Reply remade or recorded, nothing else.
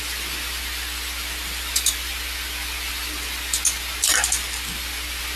recorded